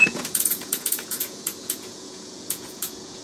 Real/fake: fake